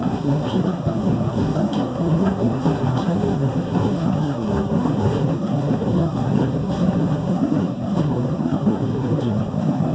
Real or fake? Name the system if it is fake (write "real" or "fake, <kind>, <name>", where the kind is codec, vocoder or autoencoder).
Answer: fake, codec, SNAC